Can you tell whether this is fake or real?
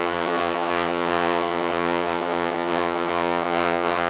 fake